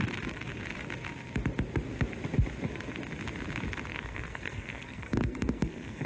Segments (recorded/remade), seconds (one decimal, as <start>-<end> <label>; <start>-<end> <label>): 0.0-3.9 recorded; 3.9-6.1 remade